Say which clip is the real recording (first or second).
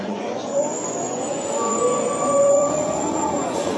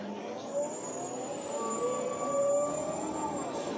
second